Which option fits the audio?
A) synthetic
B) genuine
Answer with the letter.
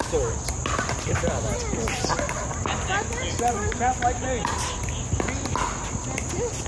B